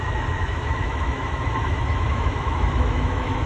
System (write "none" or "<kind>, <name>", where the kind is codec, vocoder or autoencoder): autoencoder, DAC-VAE